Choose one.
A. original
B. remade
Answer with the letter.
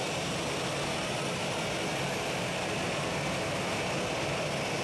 A